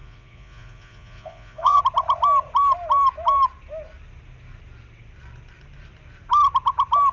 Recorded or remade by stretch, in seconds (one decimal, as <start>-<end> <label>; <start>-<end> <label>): 0.0-1.8 remade; 1.8-7.1 recorded